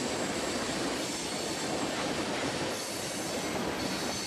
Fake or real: real